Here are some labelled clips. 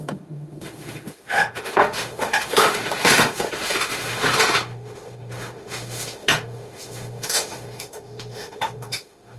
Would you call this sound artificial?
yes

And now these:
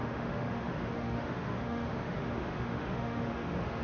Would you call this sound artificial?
yes